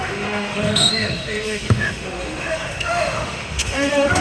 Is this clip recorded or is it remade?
remade